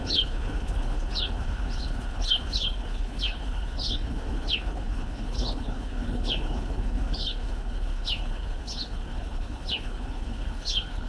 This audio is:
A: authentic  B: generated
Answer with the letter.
B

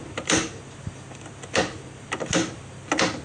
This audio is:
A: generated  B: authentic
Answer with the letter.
B